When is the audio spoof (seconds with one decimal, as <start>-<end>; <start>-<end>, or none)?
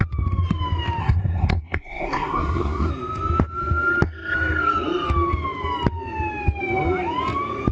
1.0-2.9